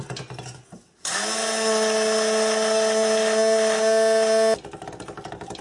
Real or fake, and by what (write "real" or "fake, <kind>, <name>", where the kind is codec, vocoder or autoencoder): real